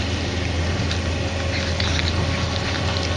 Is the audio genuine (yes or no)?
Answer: yes